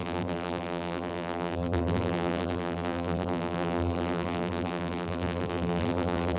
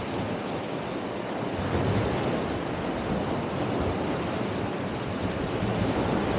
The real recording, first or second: second